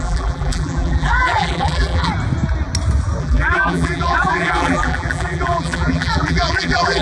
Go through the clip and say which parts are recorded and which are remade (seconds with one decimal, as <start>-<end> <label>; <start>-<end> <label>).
0.0-2.1 remade; 2.1-3.2 recorded; 3.2-7.0 remade